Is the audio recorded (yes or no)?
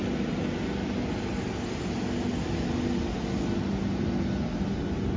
yes